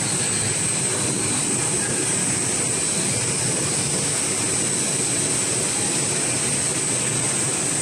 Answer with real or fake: real